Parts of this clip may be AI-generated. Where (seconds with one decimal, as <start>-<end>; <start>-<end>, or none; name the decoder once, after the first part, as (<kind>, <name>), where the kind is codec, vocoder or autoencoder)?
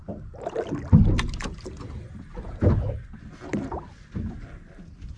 none